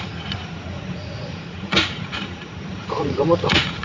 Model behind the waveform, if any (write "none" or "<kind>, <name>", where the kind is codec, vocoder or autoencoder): vocoder, Vocos